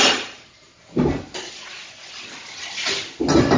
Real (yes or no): yes